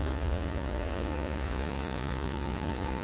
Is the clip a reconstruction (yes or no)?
yes